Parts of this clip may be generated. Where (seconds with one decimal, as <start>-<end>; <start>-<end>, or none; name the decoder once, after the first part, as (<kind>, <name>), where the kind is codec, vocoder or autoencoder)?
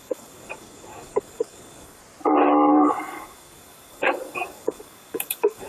0.0-2.0 (codec, DAC); 2.7-5.7